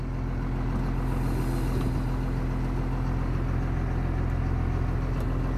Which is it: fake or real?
real